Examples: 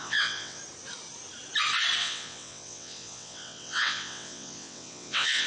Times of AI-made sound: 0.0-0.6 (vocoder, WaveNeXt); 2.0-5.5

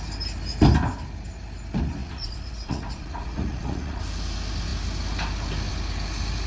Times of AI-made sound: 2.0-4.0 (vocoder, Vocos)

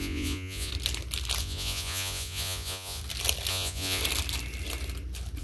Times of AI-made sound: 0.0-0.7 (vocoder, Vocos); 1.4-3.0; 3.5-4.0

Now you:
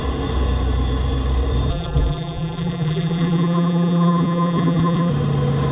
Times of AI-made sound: 1.7-5.1 (vocoder, BigVGAN v2)

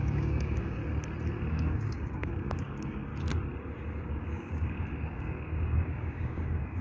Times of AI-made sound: 0.0-0.8 (codec, DAC); 1.5-3.1; 4.1-6.8

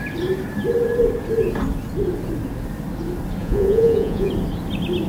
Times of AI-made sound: 3.4-4.3 (vocoder, Vocos)

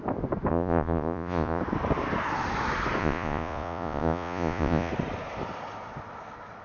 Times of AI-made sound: 0.5-1.6 (vocoder, Vocos); 3.0-4.9